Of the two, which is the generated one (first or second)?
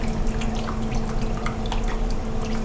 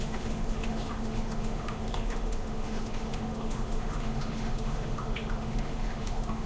second